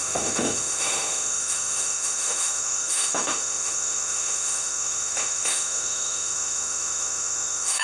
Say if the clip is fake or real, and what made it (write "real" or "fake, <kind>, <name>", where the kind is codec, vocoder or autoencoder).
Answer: fake, autoencoder, DAC-VAE